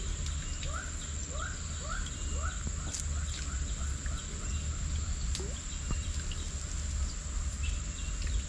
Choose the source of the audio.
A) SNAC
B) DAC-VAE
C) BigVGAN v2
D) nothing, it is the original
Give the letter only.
D